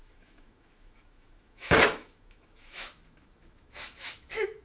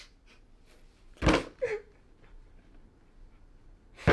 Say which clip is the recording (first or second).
second